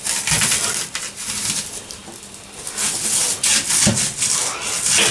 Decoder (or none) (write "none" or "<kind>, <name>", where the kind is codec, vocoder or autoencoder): none